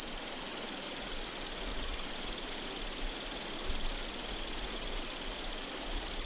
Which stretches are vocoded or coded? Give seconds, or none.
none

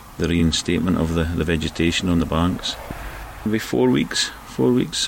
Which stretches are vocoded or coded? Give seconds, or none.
0.0-2.7 (vocoder, BigVGAN v2)

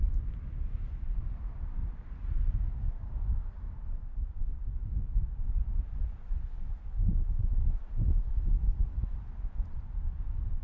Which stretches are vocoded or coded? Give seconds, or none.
1.8-3.3 (vocoder, BigVGAN v2); 6.1-7.8

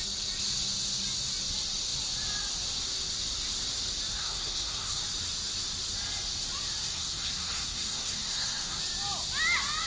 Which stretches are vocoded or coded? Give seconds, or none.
4.2-5.0 (codec, SNAC); 6.8-8.8